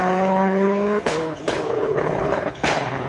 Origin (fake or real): fake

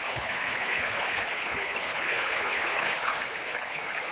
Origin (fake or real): fake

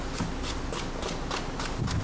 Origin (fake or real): real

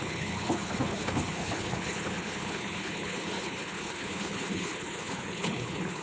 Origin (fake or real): fake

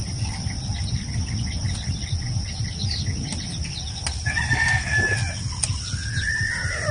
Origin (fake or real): real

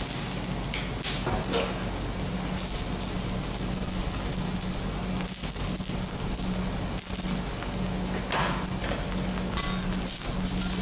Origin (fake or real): real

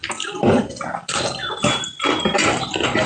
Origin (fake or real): real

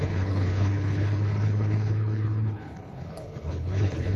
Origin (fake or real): fake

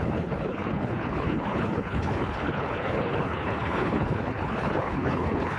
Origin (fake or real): fake